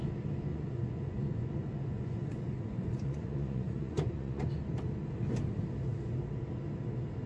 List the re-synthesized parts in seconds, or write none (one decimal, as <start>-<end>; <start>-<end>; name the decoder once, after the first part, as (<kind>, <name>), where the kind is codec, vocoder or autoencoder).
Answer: 0.5-4.6 (vocoder, Vocos)